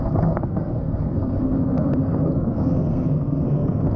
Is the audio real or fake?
fake